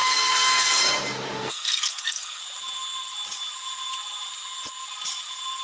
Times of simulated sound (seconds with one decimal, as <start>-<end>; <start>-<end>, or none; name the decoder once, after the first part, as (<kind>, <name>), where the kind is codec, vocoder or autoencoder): 0.0-0.8 (codec, SNAC); 1.4-2.4